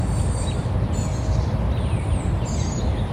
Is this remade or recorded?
recorded